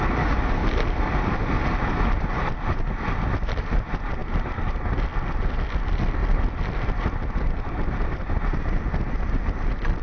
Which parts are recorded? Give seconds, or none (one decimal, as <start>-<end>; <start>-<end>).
0.0-0.6; 1.5-10.0